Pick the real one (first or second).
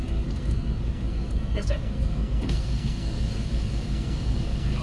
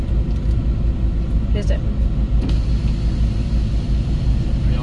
second